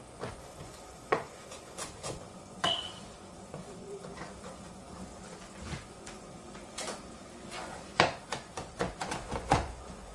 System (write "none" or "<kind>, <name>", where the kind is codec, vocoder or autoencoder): vocoder, Vocos